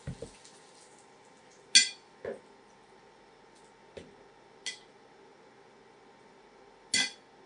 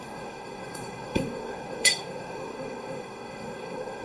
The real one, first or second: first